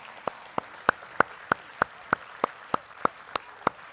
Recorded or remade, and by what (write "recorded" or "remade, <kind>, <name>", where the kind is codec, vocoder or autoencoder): recorded